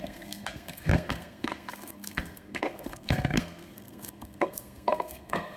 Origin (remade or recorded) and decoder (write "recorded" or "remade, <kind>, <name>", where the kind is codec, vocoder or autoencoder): remade, codec, SNAC